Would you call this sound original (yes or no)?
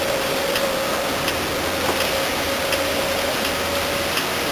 yes